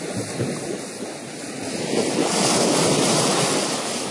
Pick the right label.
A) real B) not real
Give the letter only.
A